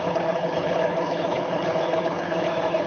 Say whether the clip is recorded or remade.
remade